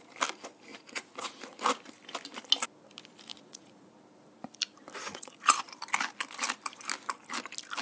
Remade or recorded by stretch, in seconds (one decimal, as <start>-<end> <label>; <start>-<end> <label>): 0.0-0.7 recorded; 0.7-1.4 remade; 1.4-3.3 recorded; 3.3-3.9 remade; 3.9-5.1 recorded; 5.1-5.6 remade; 5.6-7.8 recorded

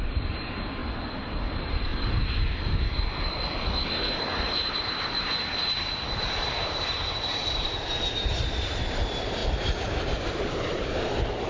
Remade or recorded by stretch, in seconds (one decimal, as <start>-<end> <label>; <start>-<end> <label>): 0.0-0.8 remade; 0.8-1.5 recorded; 1.5-1.9 remade; 1.9-4.9 recorded; 4.9-9.4 remade; 9.4-10.3 recorded; 10.3-11.5 remade

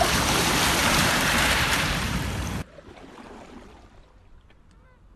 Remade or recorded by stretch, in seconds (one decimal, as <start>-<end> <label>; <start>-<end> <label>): 0.0-0.8 recorded; 0.8-3.9 remade; 3.9-5.2 recorded

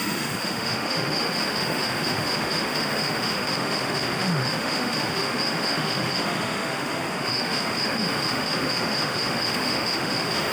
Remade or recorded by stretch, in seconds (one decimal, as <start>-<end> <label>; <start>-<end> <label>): 0.0-10.5 remade

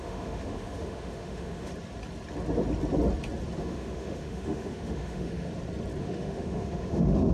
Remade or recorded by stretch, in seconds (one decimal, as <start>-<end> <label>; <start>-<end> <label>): 0.0-1.7 remade; 1.7-3.6 recorded; 3.6-5.5 remade; 5.5-6.0 recorded; 6.0-7.3 remade

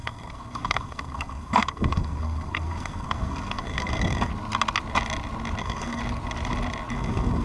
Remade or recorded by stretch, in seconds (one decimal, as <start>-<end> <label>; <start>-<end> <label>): 0.0-4.3 remade; 4.3-5.6 recorded; 5.6-6.0 remade; 6.0-6.9 recorded; 6.9-7.4 remade

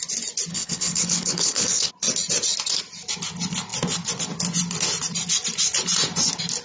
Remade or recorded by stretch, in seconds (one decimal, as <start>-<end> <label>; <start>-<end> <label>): 0.0-0.5 recorded; 0.5-1.9 remade; 1.9-6.6 recorded

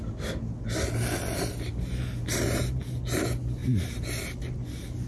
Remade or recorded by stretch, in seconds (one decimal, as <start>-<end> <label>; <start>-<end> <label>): 0.0-3.6 recorded; 3.6-4.2 remade; 4.2-5.1 recorded